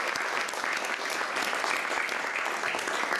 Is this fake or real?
real